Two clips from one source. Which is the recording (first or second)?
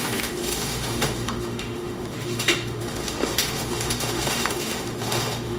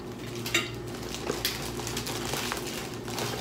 second